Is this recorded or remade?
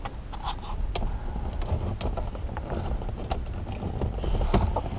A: recorded